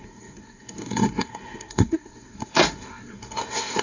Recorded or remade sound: remade